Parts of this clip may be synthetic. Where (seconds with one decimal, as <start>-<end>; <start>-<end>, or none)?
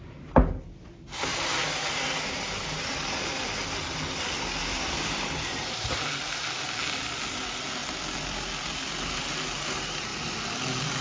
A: 1.3-2.9; 4.7-6.0